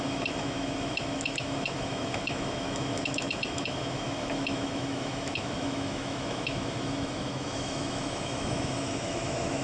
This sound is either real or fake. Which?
fake